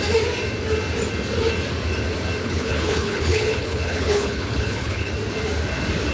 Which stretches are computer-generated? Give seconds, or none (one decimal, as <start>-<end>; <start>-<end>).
2.4-5.1